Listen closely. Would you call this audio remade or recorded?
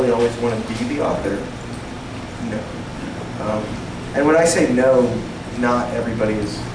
recorded